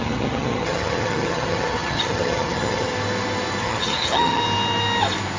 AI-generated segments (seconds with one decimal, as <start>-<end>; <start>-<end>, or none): 0.0-2.9; 3.6-4.4